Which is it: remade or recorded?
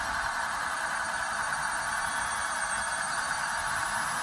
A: recorded